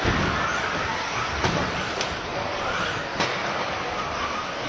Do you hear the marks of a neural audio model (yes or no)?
no